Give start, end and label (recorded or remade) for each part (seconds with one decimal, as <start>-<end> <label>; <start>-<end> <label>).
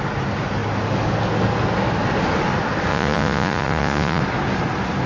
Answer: 0.0-2.9 recorded; 2.9-4.2 remade; 4.2-5.1 recorded